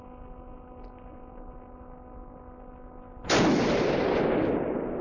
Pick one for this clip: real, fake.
real